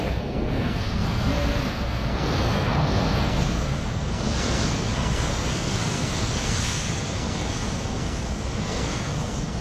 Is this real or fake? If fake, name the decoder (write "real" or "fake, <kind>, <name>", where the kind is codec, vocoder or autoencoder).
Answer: fake, codec, SNAC